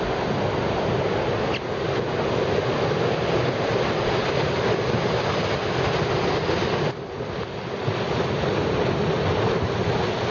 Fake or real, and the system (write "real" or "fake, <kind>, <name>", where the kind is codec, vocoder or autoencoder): real